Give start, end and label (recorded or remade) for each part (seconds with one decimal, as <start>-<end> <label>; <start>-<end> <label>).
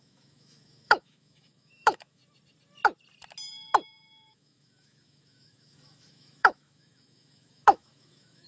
0.0-2.2 remade; 2.2-4.3 recorded; 4.3-8.5 remade